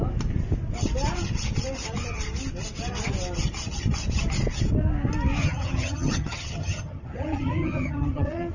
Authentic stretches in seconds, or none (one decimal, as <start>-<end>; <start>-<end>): 0.0-5.4